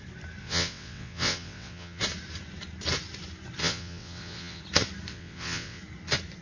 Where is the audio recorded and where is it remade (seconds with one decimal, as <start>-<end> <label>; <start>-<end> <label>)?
0.0-0.4 recorded; 0.4-2.0 remade; 2.0-3.6 recorded; 3.6-4.6 remade; 4.6-5.1 recorded; 5.1-5.8 remade; 5.8-6.4 recorded